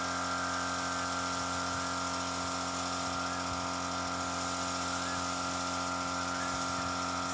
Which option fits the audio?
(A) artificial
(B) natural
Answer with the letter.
B